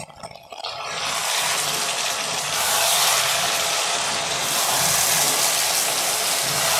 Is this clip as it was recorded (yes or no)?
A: yes